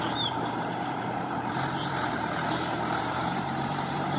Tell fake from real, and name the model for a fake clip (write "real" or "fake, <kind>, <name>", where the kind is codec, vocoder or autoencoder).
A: fake, vocoder, BigVGAN v2